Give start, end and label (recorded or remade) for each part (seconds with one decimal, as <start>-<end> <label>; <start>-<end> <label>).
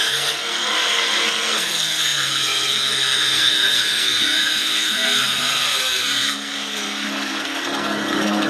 0.0-8.5 remade